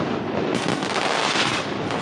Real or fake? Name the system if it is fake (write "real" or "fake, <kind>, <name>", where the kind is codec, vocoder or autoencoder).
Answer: real